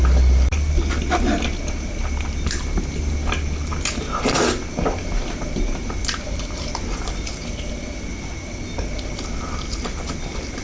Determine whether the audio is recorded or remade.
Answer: recorded